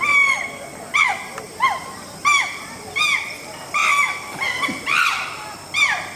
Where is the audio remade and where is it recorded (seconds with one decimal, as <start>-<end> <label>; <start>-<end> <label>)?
0.0-6.2 recorded